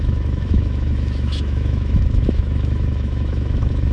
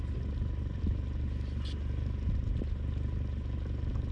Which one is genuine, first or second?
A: second